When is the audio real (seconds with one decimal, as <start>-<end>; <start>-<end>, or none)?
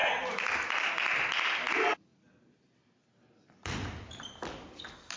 0.0-5.2